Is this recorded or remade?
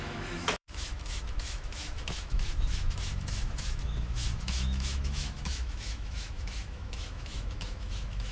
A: remade